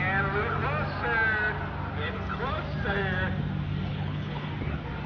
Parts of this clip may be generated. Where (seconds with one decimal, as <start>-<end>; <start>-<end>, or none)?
3.9-4.5